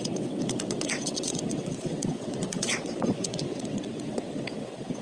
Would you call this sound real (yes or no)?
no